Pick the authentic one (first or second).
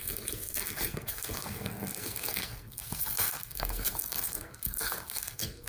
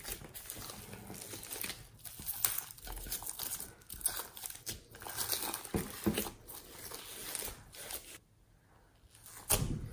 second